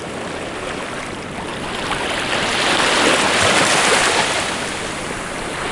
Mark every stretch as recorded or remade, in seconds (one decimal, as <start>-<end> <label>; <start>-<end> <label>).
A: 0.0-5.7 recorded

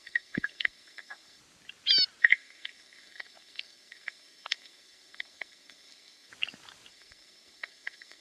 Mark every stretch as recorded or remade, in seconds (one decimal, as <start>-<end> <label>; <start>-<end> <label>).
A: 0.0-1.4 remade; 1.4-2.2 recorded; 2.2-6.3 remade; 6.3-6.9 recorded; 6.9-8.2 remade

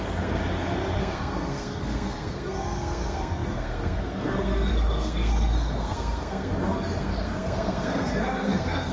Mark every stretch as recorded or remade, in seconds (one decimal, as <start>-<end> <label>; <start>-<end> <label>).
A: 0.0-0.4 remade; 0.4-1.0 recorded; 1.0-6.5 remade; 6.5-7.0 recorded; 7.0-8.9 remade

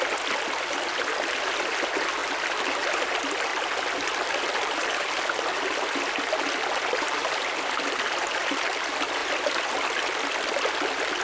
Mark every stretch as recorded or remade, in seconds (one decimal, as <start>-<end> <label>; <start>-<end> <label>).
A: 0.0-11.2 recorded

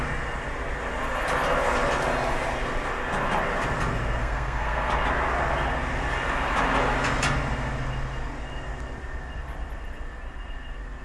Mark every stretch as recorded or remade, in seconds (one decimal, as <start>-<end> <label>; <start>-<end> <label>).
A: 0.0-4.2 recorded; 4.2-4.9 remade; 4.9-11.0 recorded

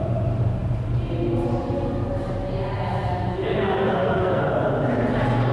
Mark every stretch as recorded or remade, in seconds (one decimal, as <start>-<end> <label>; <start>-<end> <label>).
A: 0.0-3.3 recorded; 3.3-4.4 remade; 4.4-5.5 recorded

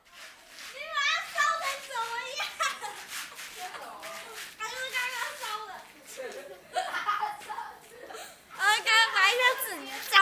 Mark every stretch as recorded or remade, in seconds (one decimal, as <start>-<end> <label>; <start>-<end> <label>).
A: 0.0-10.2 recorded

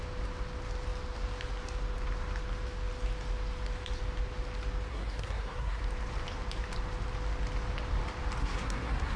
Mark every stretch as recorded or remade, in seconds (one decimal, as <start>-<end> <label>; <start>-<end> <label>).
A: 0.0-4.9 recorded; 4.9-5.8 remade; 5.8-8.4 recorded; 8.4-9.2 remade